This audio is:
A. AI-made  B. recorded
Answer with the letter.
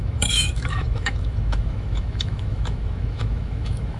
A